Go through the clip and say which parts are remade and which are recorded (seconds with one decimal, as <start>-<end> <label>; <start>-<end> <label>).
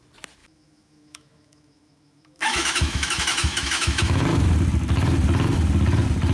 0.0-0.4 recorded; 0.4-4.2 remade; 4.2-6.3 recorded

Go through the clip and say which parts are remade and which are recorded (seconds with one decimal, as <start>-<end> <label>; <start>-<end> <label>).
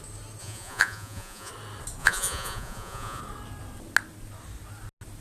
0.0-0.4 recorded; 0.4-1.5 remade; 1.5-2.0 recorded; 2.0-3.2 remade; 3.2-5.2 recorded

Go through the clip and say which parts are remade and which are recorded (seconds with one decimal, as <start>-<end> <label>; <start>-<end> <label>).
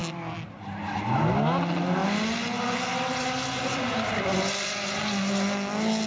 0.0-6.1 recorded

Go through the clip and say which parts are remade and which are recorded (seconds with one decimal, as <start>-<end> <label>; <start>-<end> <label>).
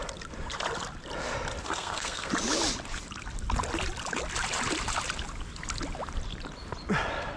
0.0-1.6 recorded; 1.6-2.3 remade; 2.3-7.4 recorded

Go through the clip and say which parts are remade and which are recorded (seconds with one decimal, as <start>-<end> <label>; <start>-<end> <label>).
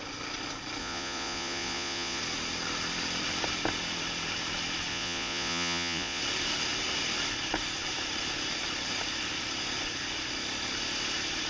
0.0-0.8 recorded; 0.8-2.2 remade; 2.2-4.9 recorded; 4.9-6.2 remade; 6.2-11.5 recorded